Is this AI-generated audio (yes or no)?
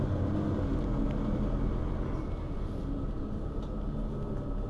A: no